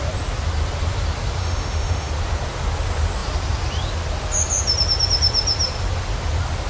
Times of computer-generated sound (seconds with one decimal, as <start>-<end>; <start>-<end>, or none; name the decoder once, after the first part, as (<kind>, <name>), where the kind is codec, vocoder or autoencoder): 1.4-2.1 (autoencoder, DAC-VAE)